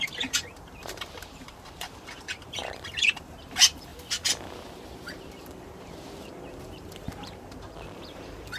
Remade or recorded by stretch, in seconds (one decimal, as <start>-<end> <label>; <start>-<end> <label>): 0.0-2.6 remade; 2.6-3.2 recorded; 3.2-3.9 remade; 3.9-5.4 recorded; 5.4-8.6 remade